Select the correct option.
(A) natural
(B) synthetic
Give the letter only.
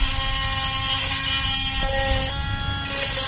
A